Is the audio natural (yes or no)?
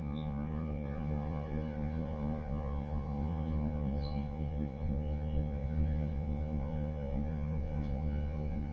no